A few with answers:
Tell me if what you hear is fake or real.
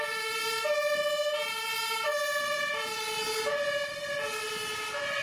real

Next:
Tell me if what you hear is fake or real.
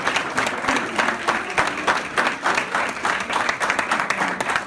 real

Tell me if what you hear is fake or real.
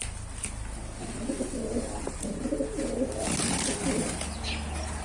real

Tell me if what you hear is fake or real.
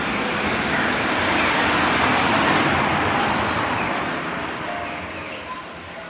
real